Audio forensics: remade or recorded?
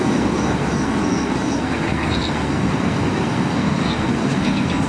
remade